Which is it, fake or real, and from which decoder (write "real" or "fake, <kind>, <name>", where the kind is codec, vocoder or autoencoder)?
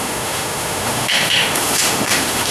fake, autoencoder, DAC-VAE